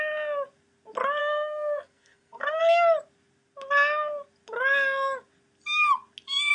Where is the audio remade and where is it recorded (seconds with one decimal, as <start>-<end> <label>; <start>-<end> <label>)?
0.0-1.2 recorded; 1.2-2.6 remade; 2.6-6.5 recorded